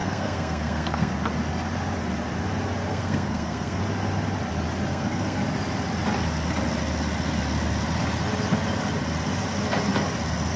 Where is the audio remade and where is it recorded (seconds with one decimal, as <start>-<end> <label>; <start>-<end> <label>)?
0.0-1.1 remade; 1.1-2.9 recorded; 2.9-3.8 remade; 3.8-4.9 recorded; 4.9-5.4 remade; 5.4-10.6 recorded